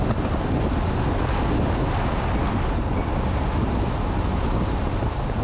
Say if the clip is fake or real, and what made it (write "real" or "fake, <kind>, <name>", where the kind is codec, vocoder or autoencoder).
real